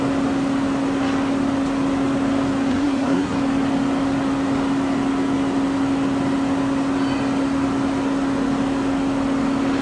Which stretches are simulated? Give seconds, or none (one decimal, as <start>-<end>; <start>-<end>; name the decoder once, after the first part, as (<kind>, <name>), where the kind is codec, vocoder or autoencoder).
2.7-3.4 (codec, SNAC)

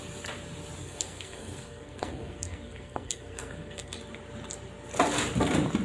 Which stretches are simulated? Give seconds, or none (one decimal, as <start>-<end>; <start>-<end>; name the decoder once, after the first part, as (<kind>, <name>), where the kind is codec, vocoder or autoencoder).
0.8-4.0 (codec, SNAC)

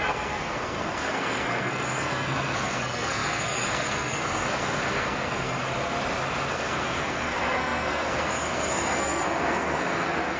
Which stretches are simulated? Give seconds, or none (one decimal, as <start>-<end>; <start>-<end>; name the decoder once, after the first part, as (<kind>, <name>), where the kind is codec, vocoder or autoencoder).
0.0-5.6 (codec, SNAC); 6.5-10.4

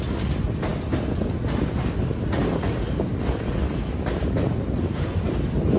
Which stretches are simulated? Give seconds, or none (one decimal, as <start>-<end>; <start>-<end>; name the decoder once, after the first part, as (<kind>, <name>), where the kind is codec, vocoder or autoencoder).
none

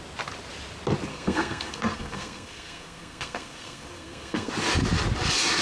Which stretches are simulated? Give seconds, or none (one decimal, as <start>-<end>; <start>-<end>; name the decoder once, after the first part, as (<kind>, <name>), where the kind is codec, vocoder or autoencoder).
1.1-4.5 (codec, SNAC)

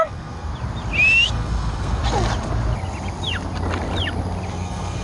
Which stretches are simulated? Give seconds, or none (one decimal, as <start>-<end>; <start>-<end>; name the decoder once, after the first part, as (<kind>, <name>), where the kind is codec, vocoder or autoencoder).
0.0-0.5 (codec, SNAC); 1.3-2.0; 4.5-5.0

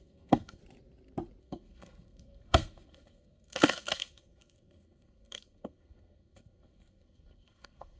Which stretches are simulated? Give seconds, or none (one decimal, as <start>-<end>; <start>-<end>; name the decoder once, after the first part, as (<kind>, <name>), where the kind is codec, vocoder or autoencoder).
0.0-0.6 (codec, SNAC); 1.4-8.0

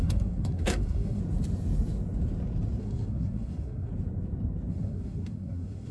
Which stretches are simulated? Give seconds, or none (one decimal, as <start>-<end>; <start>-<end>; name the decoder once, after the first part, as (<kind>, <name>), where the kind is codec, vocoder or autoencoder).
0.0-1.2 (codec, SNAC); 2.8-3.9; 4.7-5.9